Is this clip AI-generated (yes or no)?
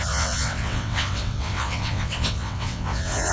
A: yes